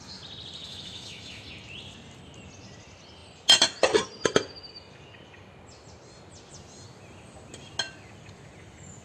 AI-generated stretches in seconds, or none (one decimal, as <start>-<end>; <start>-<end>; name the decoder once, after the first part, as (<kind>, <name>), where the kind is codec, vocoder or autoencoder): 0.6-1.5 (autoencoder, DAC-VAE)